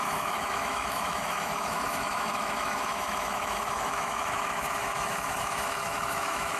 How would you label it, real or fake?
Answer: fake